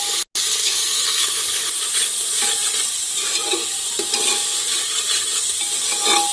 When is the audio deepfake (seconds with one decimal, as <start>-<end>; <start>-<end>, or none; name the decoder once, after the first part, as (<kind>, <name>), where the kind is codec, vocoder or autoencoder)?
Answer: 0.6-1.4 (codec, SNAC)